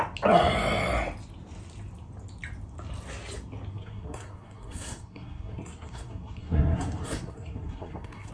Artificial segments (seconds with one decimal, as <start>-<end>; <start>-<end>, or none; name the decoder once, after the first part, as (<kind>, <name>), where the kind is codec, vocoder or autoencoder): 3.7-8.3 (codec, SNAC)